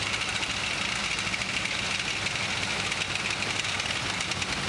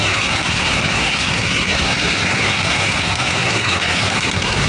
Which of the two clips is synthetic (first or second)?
second